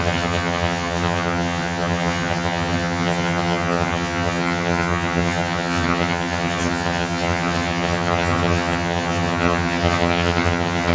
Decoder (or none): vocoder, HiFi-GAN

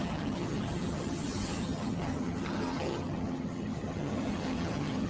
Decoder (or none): vocoder, HiFi-GAN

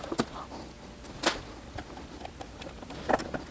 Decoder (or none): none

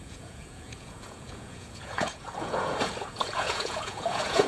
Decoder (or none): vocoder, Vocos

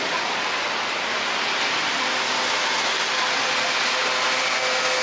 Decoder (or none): none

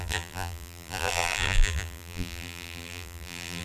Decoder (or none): vocoder, BigVGAN v2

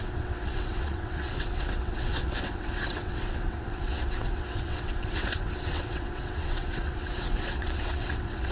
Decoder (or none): vocoder, WaveNeXt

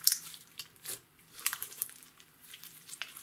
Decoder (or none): vocoder, BigVGAN v2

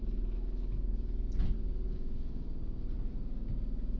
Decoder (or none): none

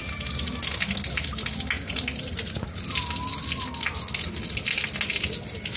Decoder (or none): none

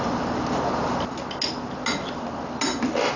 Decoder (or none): none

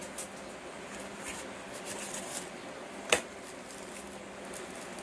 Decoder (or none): none